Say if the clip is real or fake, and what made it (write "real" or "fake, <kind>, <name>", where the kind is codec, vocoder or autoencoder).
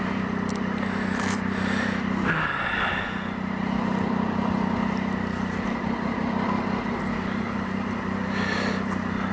real